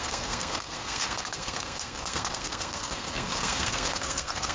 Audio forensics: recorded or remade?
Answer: remade